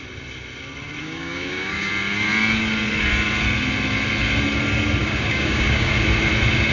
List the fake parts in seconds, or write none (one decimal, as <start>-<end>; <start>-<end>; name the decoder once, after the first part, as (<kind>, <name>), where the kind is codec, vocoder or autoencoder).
1.0-1.9 (codec, DAC); 5.0-5.9